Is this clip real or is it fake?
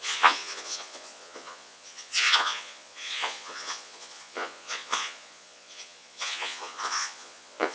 fake